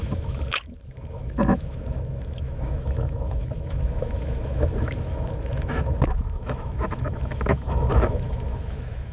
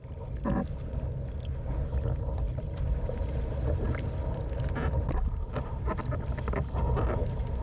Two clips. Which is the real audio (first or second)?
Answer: second